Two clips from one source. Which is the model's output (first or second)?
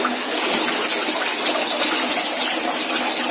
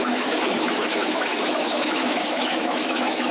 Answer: second